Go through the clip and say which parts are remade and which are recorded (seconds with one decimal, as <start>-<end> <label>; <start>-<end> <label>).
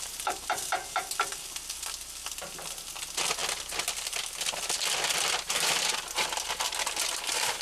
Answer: 0.0-7.6 recorded